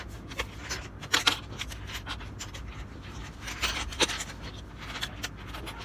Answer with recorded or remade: recorded